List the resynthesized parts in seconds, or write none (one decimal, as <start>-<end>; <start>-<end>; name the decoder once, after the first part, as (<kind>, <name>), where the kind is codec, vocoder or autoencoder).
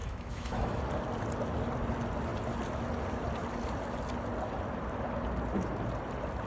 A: 0.0-0.8 (autoencoder, DAC-VAE)